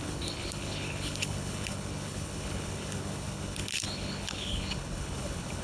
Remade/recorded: remade